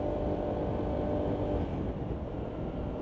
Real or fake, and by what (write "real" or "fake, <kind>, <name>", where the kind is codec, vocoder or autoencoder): real